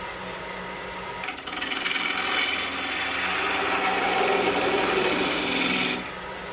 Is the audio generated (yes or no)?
no